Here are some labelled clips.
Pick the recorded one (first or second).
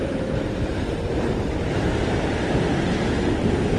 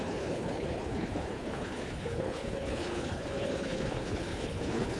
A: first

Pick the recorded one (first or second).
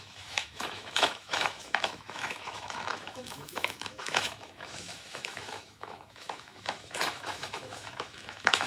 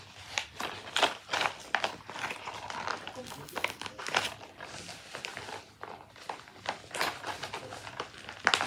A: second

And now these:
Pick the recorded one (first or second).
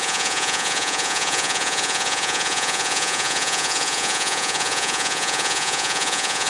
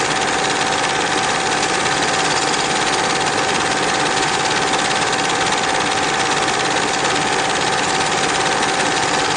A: second